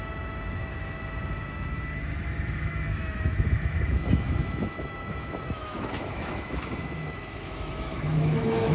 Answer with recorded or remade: remade